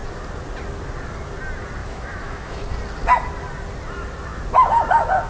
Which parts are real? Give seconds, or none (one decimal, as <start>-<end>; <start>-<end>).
0.0-1.8; 2.7-5.3